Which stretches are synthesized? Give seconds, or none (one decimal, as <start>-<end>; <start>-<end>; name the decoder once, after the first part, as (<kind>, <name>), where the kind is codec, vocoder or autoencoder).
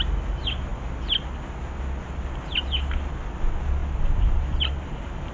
3.8-5.3 (vocoder, BigVGAN v2)